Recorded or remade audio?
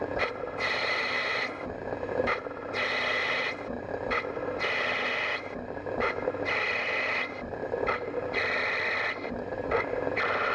recorded